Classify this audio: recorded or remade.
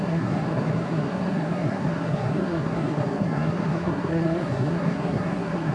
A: remade